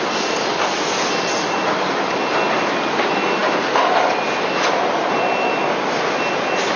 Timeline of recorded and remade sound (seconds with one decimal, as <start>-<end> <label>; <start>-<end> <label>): 0.0-6.8 recorded